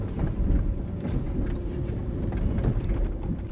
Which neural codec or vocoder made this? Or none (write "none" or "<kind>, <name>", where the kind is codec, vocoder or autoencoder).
vocoder, BigVGAN v2